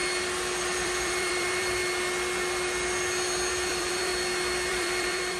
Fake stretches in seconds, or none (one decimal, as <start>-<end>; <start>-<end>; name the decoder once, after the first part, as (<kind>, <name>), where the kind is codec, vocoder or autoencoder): 0.6-1.8 (vocoder, BigVGAN v2); 3.5-4.1; 4.7-5.4